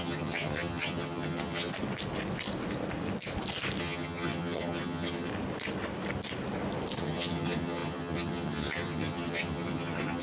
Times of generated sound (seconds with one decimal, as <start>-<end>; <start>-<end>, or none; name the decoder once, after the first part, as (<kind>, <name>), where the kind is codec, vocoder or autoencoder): 0.0-1.7 (vocoder, HiFi-GAN); 3.8-5.3; 7.0-10.2